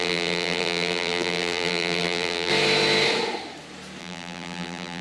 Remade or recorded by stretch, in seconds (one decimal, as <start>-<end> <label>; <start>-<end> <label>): 0.0-2.5 remade; 2.5-4.0 recorded; 4.0-5.0 remade